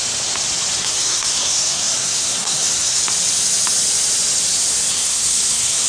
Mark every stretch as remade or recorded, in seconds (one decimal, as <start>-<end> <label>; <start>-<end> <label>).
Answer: 0.0-0.8 recorded; 0.8-3.0 remade; 3.0-4.9 recorded; 4.9-5.9 remade